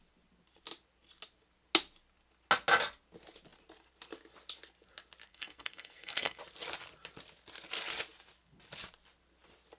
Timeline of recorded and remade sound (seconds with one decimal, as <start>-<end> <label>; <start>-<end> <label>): 0.0-5.3 recorded; 5.3-6.4 remade; 6.4-9.8 recorded